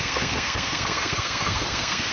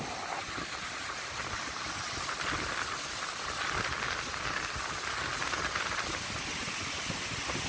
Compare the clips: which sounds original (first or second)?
second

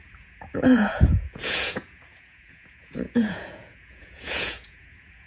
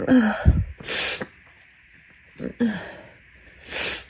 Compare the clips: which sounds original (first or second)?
second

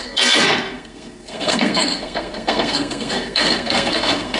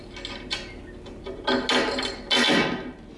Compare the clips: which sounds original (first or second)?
second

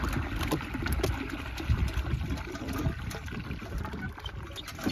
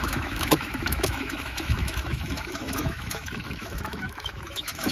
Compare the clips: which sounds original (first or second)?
first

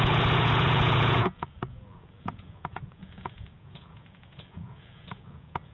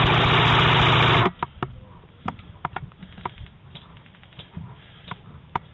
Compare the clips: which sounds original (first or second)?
second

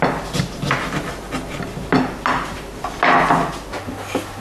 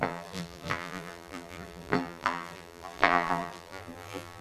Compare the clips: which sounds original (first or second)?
first